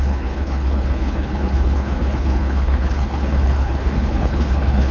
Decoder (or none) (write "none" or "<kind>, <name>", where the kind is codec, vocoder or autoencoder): codec, HILCodec